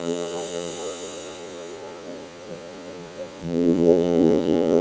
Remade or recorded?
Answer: remade